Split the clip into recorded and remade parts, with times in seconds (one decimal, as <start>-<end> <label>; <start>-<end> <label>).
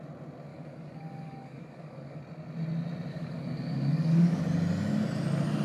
0.0-0.5 recorded; 0.5-2.2 remade; 2.2-3.1 recorded; 3.1-4.4 remade; 4.4-5.6 recorded